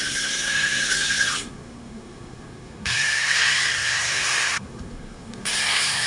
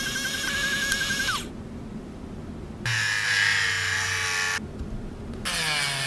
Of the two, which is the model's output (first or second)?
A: first